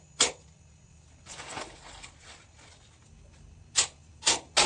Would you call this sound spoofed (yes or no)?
no